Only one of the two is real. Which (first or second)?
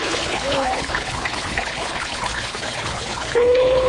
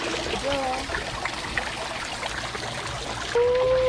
second